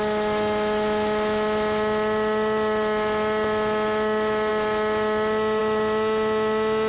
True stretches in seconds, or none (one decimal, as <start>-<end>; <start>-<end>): 0.0-6.9